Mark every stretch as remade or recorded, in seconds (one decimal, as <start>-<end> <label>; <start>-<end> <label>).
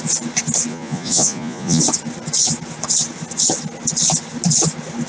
0.0-0.7 recorded; 0.7-1.8 remade; 1.8-5.1 recorded